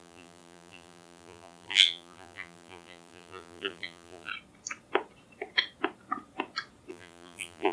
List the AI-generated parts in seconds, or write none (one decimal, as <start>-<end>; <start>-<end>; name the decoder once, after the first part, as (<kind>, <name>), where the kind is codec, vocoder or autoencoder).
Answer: 0.0-4.3 (vocoder, BigVGAN v2); 6.9-7.7

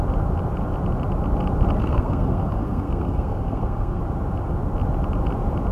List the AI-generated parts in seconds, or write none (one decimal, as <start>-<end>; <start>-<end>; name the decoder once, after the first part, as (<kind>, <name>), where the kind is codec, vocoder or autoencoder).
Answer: 1.8-4.0 (codec, SNAC)

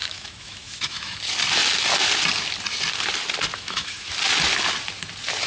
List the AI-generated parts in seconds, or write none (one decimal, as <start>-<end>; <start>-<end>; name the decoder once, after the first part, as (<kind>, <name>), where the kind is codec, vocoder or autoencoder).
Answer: 0.0-1.2 (autoencoder, DAC-VAE); 3.5-4.1

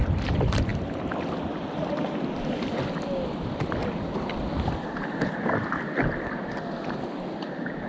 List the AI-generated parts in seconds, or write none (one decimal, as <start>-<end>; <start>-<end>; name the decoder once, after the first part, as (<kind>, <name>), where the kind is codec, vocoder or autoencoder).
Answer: 0.7-1.2 (vocoder, BigVGAN v2)

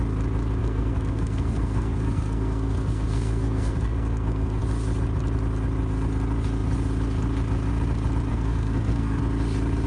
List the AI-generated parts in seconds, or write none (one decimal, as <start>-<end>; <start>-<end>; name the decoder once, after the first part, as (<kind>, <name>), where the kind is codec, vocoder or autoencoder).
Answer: 0.6-4.6 (codec, SNAC); 8.3-9.2

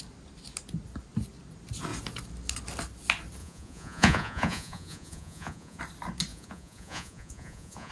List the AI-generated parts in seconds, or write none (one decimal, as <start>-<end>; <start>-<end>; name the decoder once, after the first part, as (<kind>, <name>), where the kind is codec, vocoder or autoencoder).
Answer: 3.4-5.8 (vocoder, Vocos); 6.3-7.9